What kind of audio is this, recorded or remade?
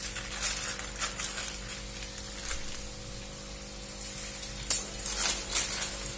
recorded